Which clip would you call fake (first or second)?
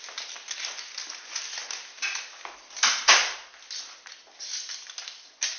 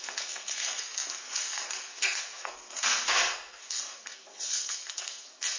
second